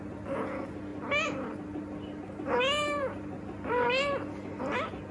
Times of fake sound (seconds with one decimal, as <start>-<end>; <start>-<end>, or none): none